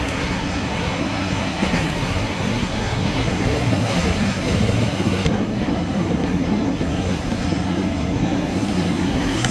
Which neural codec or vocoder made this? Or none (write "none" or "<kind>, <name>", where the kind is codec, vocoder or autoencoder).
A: codec, SNAC